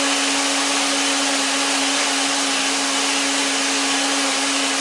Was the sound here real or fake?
real